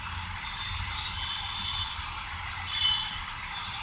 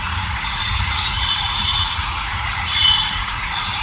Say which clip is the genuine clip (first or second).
first